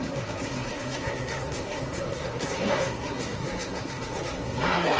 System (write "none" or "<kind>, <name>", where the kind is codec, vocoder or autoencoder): codec, SNAC